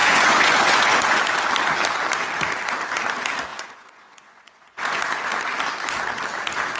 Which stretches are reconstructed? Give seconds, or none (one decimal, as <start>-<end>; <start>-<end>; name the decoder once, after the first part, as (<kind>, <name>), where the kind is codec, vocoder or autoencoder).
0.0-1.2 (vocoder, Vocos); 3.5-5.0